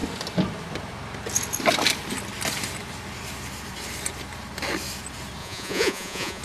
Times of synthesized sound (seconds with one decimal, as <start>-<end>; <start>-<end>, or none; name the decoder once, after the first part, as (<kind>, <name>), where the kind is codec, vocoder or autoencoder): 5.4-6.4 (vocoder, Vocos)